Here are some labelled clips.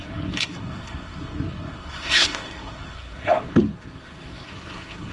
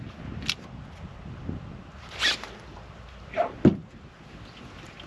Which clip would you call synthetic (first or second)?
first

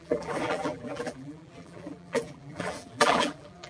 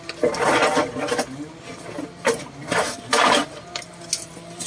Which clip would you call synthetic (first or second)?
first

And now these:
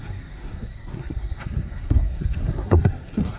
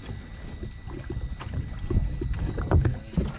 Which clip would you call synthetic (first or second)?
first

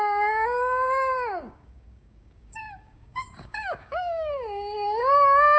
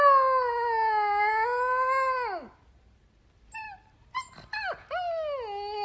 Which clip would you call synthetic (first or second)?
first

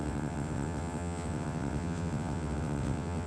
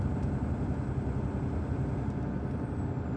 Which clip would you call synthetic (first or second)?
first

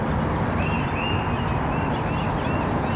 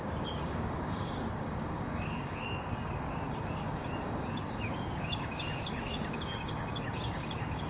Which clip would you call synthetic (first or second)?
second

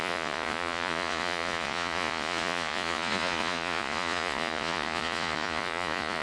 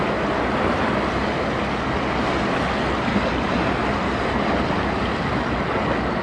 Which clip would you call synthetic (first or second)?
first